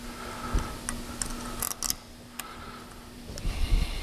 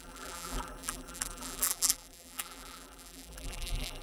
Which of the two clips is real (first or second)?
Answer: first